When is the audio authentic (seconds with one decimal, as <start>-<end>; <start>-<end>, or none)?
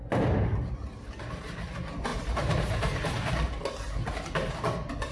0.0-2.1; 3.3-5.1